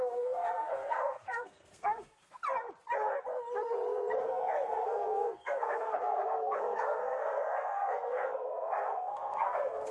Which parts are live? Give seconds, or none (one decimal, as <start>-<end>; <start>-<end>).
2.4-4.2